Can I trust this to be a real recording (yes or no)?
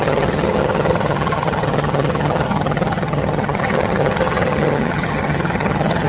no